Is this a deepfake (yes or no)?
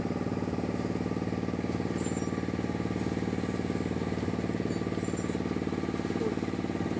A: no